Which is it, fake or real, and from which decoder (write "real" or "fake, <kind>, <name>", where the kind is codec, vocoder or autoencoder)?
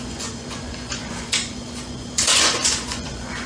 fake, vocoder, Vocos